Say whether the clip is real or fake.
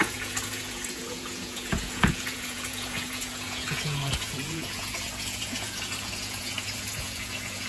fake